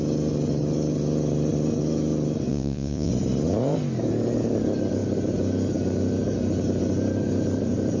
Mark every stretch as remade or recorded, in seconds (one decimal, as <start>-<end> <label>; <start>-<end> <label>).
0.0-2.5 recorded; 2.5-3.1 remade; 3.1-8.0 recorded